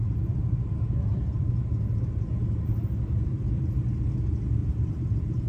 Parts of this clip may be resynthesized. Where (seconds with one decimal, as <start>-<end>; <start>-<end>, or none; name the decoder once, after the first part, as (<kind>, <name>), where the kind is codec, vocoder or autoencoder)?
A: 0.4-3.7 (vocoder, BigVGAN v2); 4.6-5.5